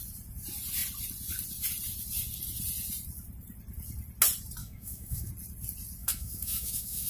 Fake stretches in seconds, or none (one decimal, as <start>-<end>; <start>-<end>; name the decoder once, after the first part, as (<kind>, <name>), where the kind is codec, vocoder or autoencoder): 4.6-5.3 (autoencoder, DAC-VAE); 6.0-7.1